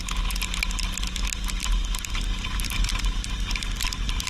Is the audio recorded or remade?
recorded